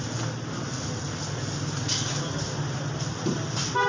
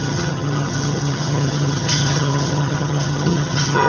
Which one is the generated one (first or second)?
second